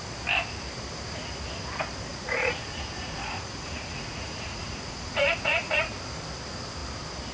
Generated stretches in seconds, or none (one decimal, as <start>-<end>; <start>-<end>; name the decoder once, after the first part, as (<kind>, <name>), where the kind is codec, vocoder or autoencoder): 2.1-5.9 (vocoder, Vocos)